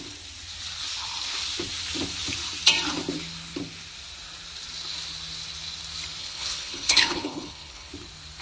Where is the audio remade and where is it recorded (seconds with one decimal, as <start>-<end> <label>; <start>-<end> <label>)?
0.0-6.2 recorded; 6.2-7.9 remade; 7.9-8.4 recorded